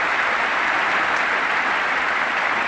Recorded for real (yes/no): yes